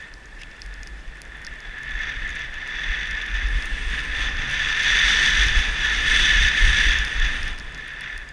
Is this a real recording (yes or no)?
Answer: no